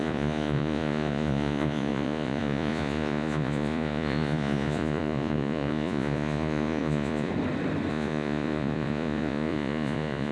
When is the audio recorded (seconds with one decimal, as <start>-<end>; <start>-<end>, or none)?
7.3-7.9